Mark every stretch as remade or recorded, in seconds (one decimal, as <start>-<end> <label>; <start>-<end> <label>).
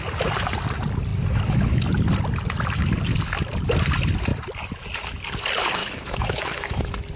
0.0-5.8 recorded; 5.8-6.8 remade; 6.8-7.2 recorded